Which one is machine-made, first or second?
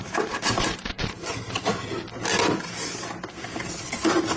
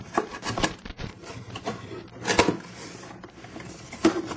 second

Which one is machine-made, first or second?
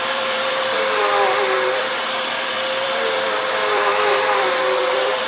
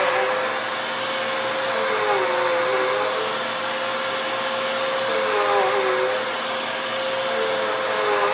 first